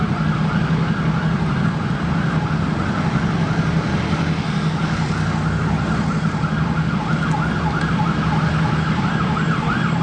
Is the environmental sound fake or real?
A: real